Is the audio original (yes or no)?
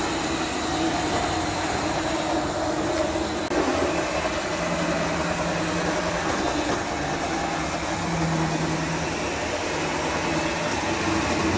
yes